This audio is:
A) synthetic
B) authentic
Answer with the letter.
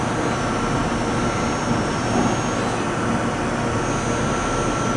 B